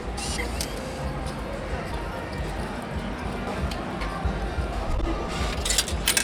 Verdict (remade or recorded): recorded